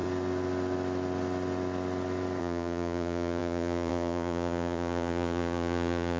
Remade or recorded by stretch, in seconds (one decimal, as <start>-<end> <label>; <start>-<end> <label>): 0.0-2.4 recorded; 2.4-6.2 remade